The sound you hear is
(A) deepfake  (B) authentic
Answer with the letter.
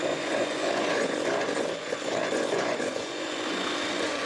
A